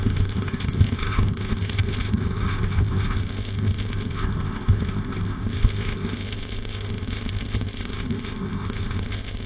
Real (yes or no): no